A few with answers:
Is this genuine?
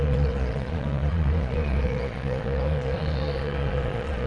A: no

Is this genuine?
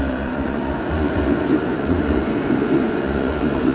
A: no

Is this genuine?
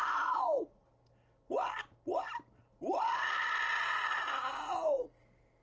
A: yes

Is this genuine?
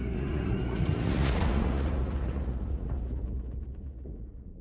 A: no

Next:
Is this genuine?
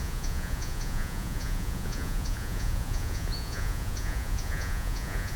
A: no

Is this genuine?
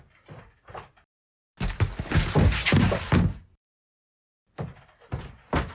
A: yes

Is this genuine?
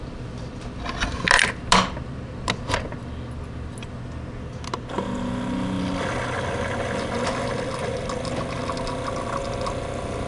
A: yes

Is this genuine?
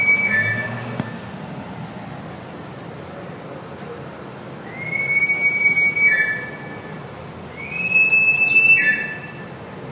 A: yes